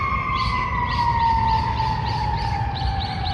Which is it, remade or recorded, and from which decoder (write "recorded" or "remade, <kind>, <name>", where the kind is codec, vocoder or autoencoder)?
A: recorded